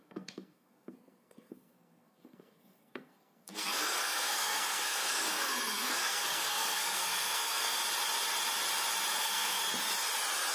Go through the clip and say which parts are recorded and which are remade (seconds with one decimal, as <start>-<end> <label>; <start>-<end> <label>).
0.0-7.8 remade; 7.8-9.2 recorded; 9.2-9.6 remade; 9.6-10.5 recorded